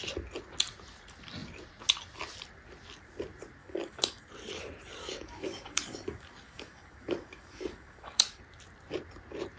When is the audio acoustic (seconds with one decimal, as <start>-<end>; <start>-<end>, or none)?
0.0-3.6; 4.3-5.0; 8.4-9.6